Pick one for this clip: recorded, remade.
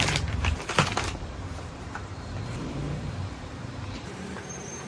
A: remade